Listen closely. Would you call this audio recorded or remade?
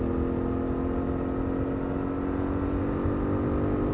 recorded